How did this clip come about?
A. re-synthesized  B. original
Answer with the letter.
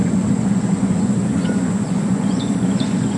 A